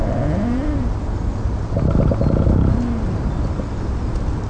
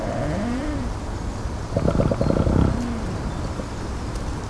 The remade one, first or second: second